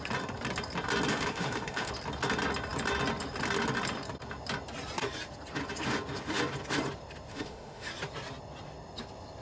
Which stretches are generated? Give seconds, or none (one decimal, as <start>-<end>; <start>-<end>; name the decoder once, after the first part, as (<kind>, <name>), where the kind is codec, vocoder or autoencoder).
1.1-1.9 (autoencoder, DAC-VAE); 7.3-7.9